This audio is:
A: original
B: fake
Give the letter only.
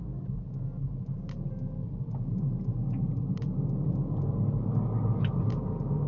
A